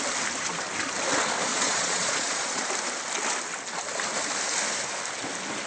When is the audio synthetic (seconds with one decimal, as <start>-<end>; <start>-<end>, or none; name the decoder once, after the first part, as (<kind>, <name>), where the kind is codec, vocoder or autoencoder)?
1.5-2.7 (vocoder, Vocos)